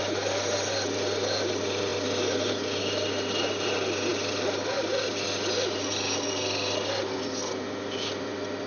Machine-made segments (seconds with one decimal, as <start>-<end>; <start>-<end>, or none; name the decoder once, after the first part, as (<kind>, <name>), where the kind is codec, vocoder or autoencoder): 1.9-2.5 (vocoder, BigVGAN v2)